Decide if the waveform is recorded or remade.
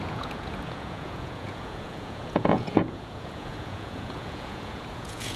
remade